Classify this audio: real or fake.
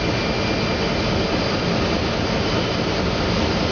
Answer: real